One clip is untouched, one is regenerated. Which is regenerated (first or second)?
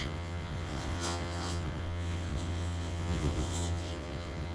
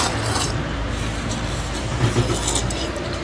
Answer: first